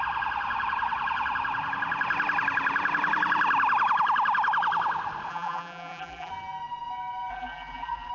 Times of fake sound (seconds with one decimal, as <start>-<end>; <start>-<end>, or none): 5.3-6.3; 7.3-8.1